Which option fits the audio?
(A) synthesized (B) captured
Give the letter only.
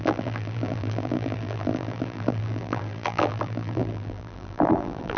A